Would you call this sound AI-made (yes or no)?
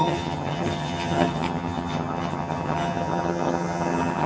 yes